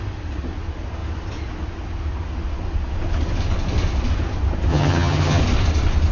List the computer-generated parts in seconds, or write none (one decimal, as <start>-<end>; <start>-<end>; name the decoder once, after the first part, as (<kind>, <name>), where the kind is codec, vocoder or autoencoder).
4.7-5.4 (vocoder, HiFi-GAN)